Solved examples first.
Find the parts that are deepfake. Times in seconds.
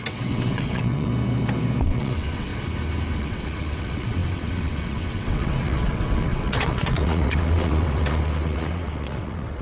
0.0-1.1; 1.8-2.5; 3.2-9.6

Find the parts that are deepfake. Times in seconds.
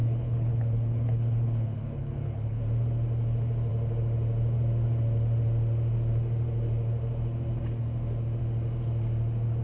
0.0-2.6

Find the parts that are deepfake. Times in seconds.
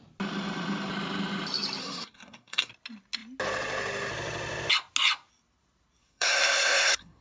1.8-2.7; 6.0-7.2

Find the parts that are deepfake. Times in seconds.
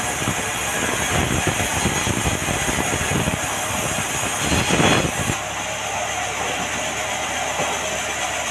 none